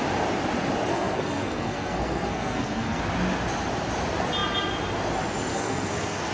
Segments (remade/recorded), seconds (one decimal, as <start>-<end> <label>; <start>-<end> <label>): 0.0-0.9 recorded; 0.9-3.0 remade; 3.0-5.5 recorded; 5.5-6.3 remade